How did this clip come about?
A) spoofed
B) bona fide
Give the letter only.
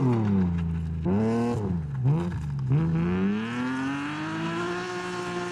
B